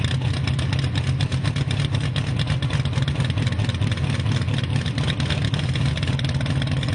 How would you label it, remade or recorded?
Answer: recorded